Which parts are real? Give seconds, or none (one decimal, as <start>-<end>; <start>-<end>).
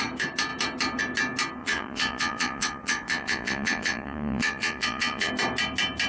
0.0-1.6; 5.3-6.1